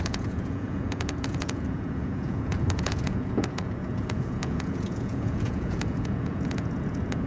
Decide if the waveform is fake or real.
fake